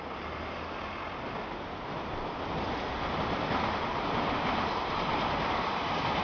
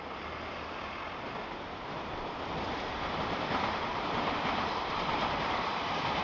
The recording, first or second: first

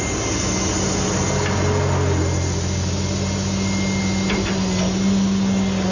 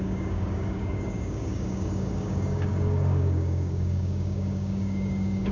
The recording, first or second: first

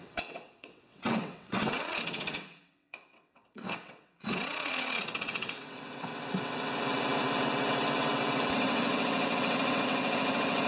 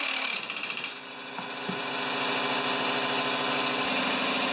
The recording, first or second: second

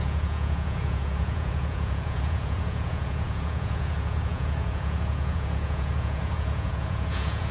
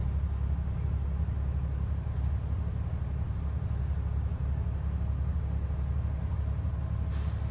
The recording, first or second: second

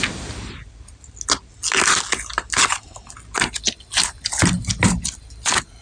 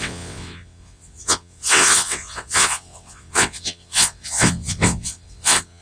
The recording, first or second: first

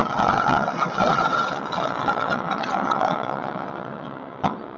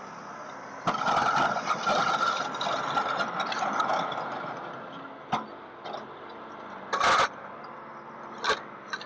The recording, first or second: second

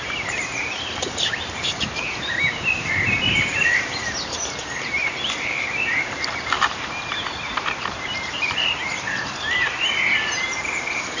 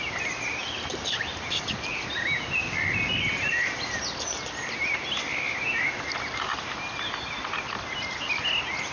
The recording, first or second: second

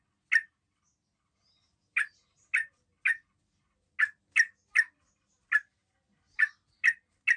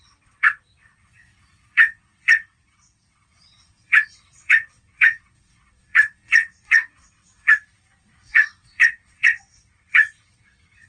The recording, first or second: first